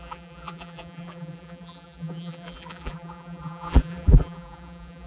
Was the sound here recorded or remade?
remade